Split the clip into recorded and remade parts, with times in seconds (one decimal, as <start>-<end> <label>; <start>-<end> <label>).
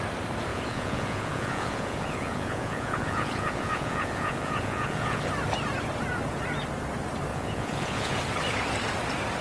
0.0-0.5 recorded; 0.5-5.3 remade; 5.3-7.3 recorded; 7.3-8.2 remade; 8.2-9.4 recorded